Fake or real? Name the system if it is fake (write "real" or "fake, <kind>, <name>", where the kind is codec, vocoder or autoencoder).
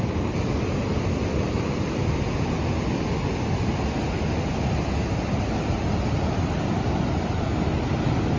real